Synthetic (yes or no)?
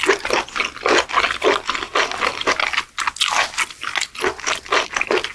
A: no